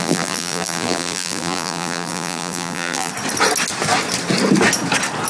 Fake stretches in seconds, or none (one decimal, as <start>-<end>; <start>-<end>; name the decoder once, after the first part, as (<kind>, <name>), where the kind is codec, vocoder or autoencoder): 0.0-3.1 (vocoder, BigVGAN v2)